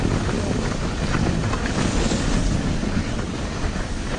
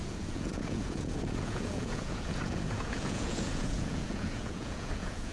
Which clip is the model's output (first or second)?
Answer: second